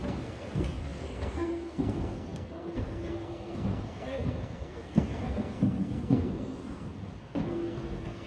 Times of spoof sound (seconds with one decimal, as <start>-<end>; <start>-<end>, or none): 0.0-8.3